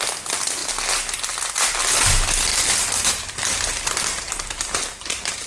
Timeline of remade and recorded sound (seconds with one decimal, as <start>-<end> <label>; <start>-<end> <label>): 0.0-2.5 recorded; 2.5-5.5 remade